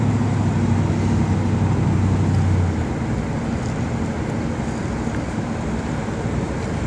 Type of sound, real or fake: real